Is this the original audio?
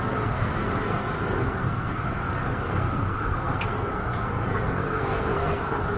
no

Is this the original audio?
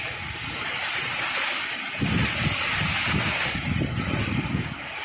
yes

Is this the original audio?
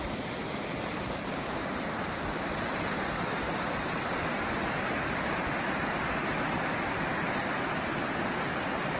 yes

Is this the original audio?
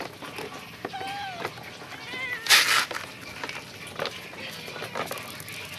yes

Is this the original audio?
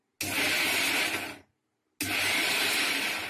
yes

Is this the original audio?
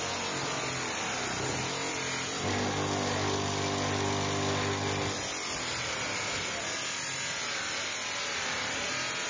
yes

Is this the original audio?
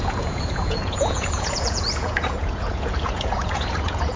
no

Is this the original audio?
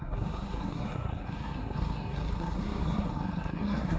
no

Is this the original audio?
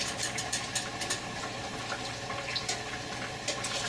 yes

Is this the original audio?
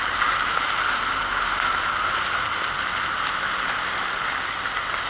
yes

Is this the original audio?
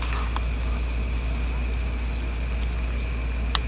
yes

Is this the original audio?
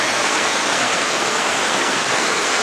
no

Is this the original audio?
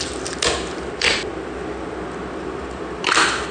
yes